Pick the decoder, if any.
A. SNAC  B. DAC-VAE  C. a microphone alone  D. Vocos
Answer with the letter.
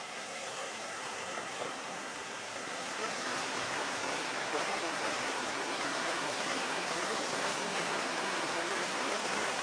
A